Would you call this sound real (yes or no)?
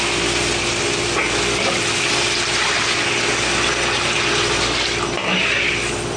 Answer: yes